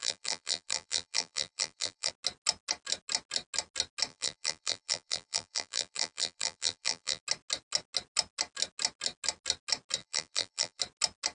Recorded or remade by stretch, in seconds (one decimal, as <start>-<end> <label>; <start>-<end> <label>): 0.0-2.1 remade; 2.1-4.1 recorded; 4.1-7.2 remade; 7.2-10.0 recorded; 10.0-10.8 remade; 10.8-11.3 recorded